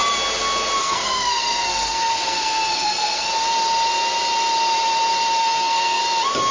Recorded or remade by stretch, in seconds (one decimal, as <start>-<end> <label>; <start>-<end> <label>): 0.0-0.8 recorded; 0.8-3.3 remade; 3.3-5.4 recorded; 5.4-6.0 remade; 6.0-6.5 recorded